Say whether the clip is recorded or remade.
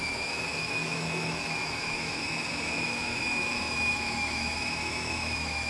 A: remade